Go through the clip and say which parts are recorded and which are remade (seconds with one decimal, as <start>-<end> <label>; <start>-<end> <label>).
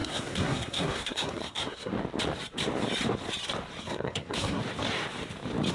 0.0-1.9 remade; 1.9-3.8 recorded; 3.8-4.6 remade; 4.6-5.7 recorded